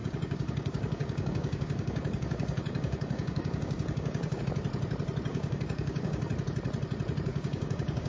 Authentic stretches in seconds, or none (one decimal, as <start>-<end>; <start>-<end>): 4.4-5.3; 6.3-7.3